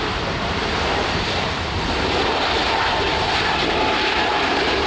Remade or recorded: remade